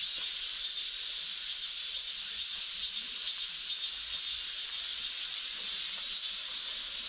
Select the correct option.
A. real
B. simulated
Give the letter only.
A